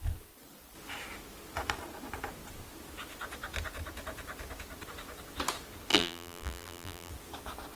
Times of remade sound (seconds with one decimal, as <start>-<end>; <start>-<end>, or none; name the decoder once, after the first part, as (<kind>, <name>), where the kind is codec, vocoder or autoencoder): 5.9-7.1 (vocoder, BigVGAN v2)